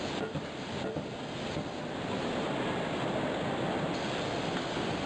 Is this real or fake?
real